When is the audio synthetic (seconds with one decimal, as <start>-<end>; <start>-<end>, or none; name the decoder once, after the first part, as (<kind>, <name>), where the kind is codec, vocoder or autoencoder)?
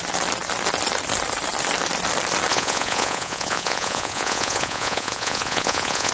2.5-6.1 (vocoder, Vocos)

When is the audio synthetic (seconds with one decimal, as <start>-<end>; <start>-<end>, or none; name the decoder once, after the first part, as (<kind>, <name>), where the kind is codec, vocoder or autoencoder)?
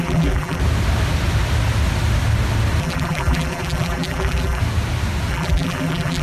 0.0-0.6 (vocoder, BigVGAN v2); 2.8-4.6; 5.3-6.2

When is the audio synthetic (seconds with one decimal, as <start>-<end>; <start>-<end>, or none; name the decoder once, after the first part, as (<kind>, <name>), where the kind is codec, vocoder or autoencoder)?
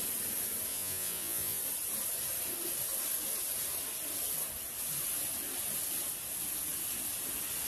0.7-1.6 (vocoder, Vocos)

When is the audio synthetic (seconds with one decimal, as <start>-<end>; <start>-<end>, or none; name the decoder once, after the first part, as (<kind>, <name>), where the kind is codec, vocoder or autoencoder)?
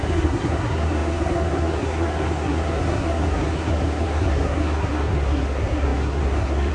0.0-6.7 (codec, SNAC)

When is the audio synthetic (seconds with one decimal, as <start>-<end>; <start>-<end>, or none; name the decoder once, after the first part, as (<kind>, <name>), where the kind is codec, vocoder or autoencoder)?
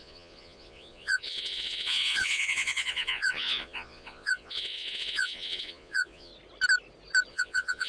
0.0-6.3 (vocoder, Vocos); 7.3-7.9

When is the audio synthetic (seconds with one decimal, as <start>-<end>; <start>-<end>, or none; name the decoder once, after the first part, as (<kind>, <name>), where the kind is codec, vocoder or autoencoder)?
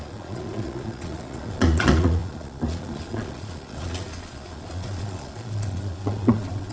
0.0-6.7 (vocoder, Vocos)